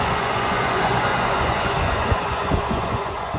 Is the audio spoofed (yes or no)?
yes